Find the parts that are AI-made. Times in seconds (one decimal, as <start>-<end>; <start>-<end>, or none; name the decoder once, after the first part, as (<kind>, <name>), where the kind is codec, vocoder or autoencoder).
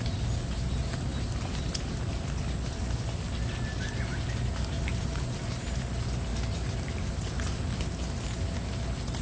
4.1-5.0 (vocoder, BigVGAN v2); 6.3-7.6